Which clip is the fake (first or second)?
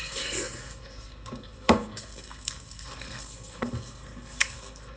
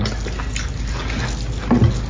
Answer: first